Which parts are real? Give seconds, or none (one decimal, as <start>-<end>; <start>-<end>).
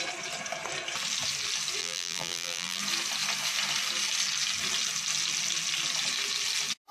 0.0-1.8; 2.8-6.9